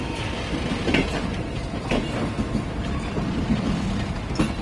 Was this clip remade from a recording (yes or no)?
no